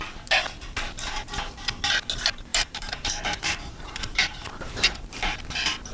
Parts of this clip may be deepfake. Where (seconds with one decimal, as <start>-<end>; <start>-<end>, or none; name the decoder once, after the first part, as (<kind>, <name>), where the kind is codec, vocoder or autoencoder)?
2.5-5.0 (vocoder, BigVGAN v2)